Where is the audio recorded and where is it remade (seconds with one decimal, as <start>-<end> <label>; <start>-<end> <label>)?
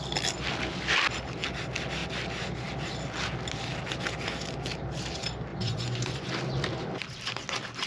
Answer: 0.0-5.5 recorded; 5.5-6.3 remade; 6.3-7.9 recorded